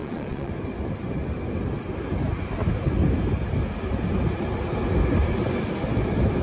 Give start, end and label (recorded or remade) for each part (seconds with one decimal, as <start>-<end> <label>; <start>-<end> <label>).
0.0-0.5 remade; 0.5-6.4 recorded